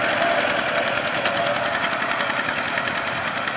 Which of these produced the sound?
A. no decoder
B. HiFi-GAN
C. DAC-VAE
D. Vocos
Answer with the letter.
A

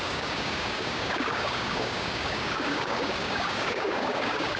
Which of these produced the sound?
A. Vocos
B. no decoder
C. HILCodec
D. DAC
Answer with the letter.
D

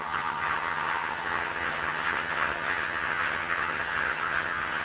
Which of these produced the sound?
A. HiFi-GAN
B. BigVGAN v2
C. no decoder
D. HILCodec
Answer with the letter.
A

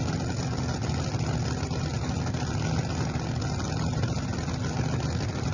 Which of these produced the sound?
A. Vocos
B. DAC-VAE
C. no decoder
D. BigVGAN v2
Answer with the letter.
C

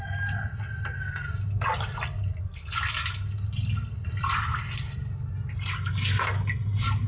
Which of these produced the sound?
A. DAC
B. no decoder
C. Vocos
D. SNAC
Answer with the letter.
B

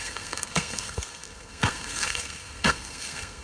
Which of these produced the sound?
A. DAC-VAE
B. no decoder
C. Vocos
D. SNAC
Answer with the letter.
D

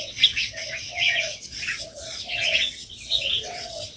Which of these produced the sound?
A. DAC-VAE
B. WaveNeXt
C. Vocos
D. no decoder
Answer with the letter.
B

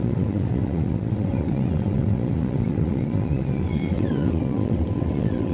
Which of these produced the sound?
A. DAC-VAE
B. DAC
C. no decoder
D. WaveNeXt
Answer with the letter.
D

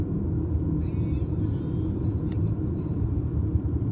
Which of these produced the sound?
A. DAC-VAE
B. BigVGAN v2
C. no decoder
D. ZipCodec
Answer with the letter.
C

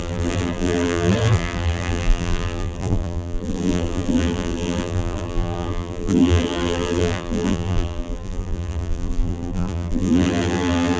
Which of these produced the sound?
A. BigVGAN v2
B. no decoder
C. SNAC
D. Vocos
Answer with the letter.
A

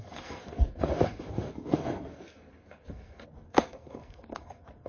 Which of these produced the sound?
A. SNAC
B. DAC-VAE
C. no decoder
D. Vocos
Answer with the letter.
A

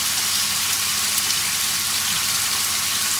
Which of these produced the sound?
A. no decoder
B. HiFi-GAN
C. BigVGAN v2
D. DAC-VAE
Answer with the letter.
A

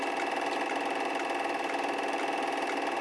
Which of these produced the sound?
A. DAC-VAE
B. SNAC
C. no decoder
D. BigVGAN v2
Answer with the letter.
C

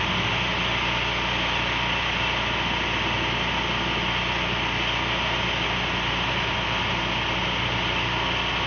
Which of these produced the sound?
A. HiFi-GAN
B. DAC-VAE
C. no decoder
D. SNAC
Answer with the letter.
C